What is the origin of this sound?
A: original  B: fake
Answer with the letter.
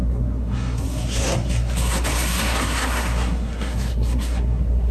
B